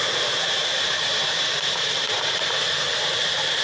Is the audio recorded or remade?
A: remade